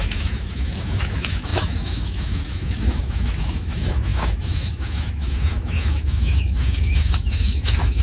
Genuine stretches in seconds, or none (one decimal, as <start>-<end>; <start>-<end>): none